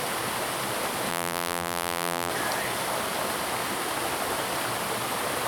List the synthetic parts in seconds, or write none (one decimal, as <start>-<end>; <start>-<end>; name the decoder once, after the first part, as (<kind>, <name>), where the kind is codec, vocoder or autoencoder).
1.1-2.3 (vocoder, BigVGAN v2)